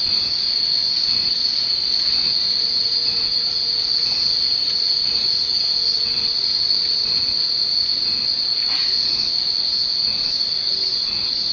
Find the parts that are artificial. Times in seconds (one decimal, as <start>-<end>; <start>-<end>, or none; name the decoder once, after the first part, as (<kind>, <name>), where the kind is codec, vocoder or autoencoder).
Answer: none